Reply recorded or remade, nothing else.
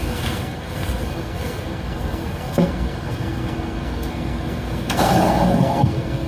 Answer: remade